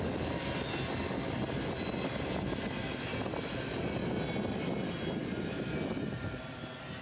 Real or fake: real